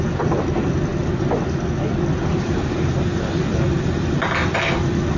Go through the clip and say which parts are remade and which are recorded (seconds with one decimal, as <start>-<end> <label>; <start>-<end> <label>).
0.0-5.2 recorded